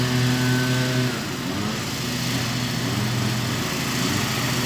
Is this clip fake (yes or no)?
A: no